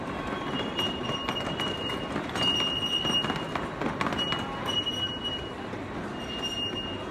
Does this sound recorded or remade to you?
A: recorded